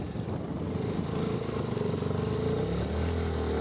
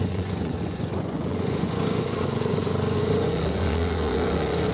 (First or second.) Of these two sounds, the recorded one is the first